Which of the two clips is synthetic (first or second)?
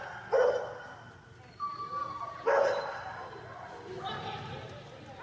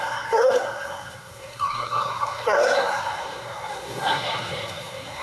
second